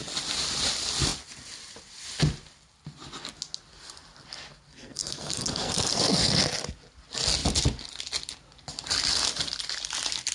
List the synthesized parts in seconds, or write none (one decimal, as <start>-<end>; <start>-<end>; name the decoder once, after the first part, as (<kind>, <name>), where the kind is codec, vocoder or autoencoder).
4.7-6.4 (codec, SNAC)